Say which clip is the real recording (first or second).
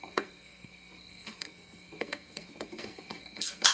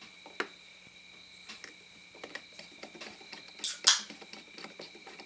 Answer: second